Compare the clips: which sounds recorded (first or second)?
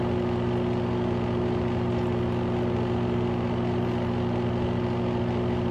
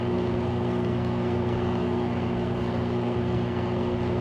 first